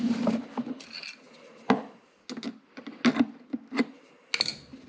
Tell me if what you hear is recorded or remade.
recorded